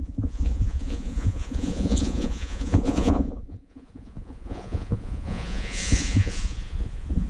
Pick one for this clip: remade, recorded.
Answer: remade